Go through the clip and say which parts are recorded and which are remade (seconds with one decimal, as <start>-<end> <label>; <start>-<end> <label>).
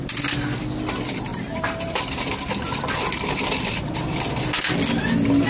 0.0-1.3 recorded; 1.3-2.0 remade; 2.0-5.5 recorded